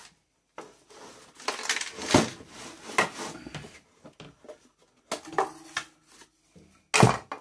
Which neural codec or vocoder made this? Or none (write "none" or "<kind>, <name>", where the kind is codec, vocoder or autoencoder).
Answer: none